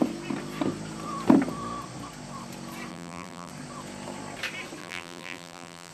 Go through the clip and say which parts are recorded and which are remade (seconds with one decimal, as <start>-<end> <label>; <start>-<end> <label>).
0.0-2.9 recorded; 2.9-3.5 remade; 3.5-4.8 recorded; 4.8-5.9 remade